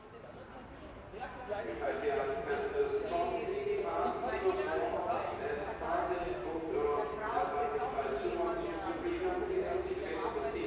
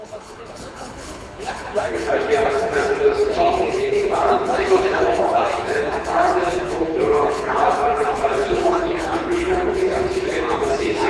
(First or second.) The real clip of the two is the first